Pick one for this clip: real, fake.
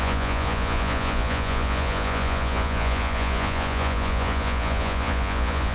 fake